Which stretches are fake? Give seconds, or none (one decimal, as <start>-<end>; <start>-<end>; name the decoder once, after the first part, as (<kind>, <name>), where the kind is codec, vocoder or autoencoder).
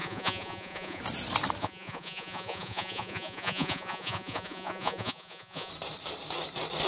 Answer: 0.0-1.0 (vocoder, Vocos); 1.6-5.7